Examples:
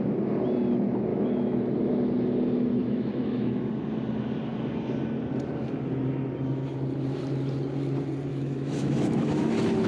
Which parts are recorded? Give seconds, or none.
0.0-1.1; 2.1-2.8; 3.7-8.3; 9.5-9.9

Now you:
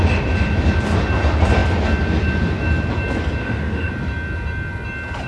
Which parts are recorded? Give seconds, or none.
0.0-3.4; 3.9-5.3